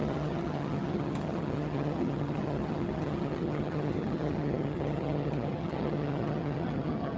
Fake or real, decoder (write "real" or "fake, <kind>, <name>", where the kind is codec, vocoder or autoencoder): fake, vocoder, HiFi-GAN